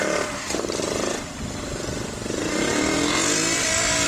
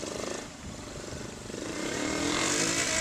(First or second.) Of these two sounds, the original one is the first